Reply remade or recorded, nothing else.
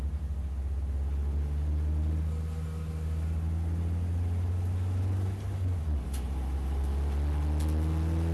recorded